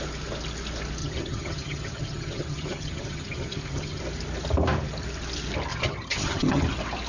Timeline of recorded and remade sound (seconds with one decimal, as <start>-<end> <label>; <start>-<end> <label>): 0.0-1.0 recorded; 1.0-4.0 remade; 4.0-5.7 recorded; 5.7-6.6 remade; 6.6-7.1 recorded